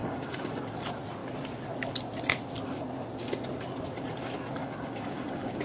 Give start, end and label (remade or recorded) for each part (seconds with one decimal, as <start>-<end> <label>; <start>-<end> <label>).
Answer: 0.0-0.6 remade; 0.6-4.6 recorded; 4.6-5.6 remade